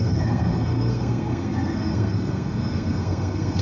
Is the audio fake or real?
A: fake